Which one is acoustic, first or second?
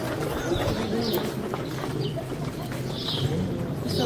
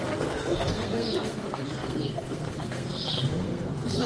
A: first